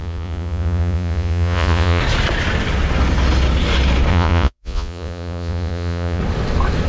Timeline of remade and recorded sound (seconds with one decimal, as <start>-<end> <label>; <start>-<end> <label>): 0.0-2.0 remade; 2.0-4.1 recorded; 4.1-6.2 remade; 6.2-6.9 recorded